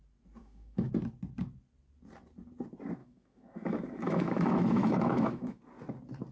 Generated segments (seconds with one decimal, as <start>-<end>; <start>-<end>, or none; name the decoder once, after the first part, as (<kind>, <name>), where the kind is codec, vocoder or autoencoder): 0.4-0.9 (autoencoder, DAC-VAE); 3.0-5.6